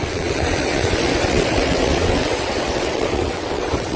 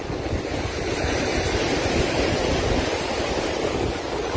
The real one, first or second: second